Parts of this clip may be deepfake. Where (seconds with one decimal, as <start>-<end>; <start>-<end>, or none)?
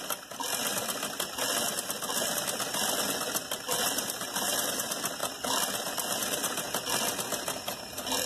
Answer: none